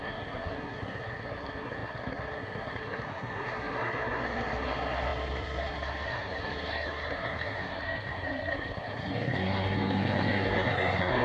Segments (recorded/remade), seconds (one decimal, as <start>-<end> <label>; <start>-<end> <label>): 0.0-11.2 remade